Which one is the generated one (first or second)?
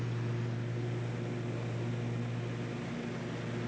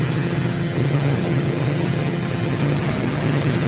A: second